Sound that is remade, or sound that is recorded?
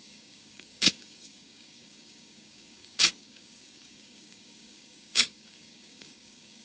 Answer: remade